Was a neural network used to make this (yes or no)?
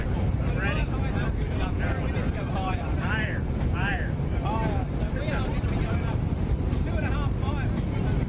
yes